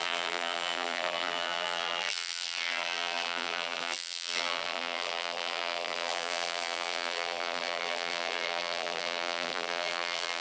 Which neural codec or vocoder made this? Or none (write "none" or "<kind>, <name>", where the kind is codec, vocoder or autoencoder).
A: vocoder, BigVGAN v2